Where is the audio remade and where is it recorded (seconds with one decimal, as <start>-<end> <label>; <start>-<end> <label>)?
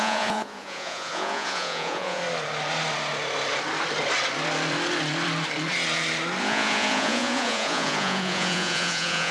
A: 0.0-2.2 remade; 2.2-6.4 recorded; 6.4-9.3 remade